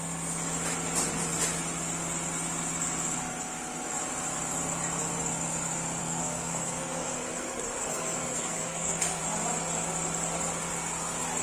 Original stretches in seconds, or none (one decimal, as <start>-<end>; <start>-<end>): 0.0-6.0; 9.2-11.4